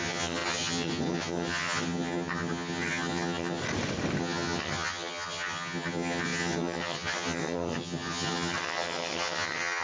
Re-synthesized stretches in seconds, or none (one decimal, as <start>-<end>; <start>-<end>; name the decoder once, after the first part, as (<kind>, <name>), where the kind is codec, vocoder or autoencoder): 0.0-3.6 (vocoder, HiFi-GAN); 4.2-9.8